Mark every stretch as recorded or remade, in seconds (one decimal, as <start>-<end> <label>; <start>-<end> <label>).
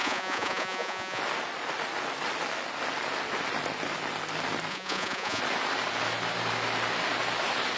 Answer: 0.0-1.2 remade; 1.2-4.7 recorded; 4.7-5.4 remade; 5.4-7.8 recorded